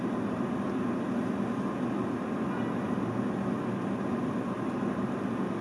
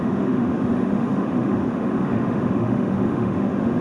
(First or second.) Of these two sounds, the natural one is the first